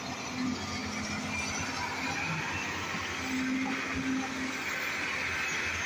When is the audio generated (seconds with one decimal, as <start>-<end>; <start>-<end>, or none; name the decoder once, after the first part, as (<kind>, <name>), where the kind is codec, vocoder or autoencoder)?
none